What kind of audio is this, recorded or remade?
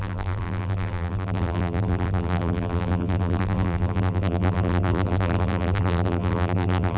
remade